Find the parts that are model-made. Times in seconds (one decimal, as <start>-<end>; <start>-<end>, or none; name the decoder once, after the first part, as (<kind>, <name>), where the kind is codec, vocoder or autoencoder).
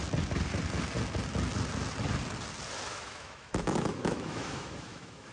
2.9-5.3 (autoencoder, DAC-VAE)